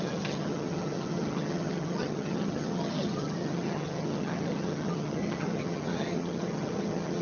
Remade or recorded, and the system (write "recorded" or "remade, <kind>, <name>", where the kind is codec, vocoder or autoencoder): remade, vocoder, HiFi-GAN